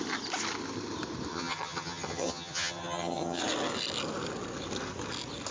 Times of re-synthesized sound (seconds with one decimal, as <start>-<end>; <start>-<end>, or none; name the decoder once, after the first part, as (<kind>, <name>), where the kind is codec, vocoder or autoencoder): 1.3-3.4 (vocoder, HiFi-GAN)

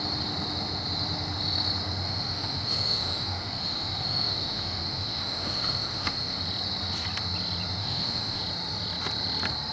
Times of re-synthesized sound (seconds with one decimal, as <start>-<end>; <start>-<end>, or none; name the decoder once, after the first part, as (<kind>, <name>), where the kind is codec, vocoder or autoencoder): 2.0-6.4 (autoencoder, DAC-VAE); 7.8-8.4